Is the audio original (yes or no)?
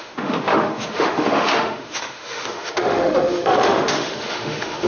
no